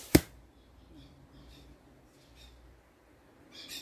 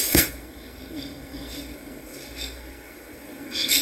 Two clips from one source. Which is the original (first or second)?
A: first